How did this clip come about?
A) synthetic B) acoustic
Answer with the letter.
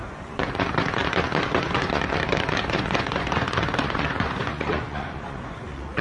A